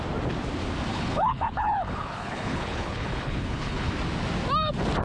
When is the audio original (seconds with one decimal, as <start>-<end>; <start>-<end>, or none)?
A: 0.0-0.9; 3.9-5.0